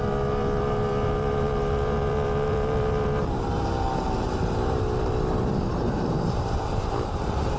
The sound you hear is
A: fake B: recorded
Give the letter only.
A